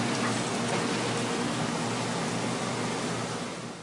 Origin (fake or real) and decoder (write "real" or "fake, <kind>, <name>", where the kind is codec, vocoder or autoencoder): real